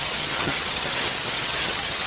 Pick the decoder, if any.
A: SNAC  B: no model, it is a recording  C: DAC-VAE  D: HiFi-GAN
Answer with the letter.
D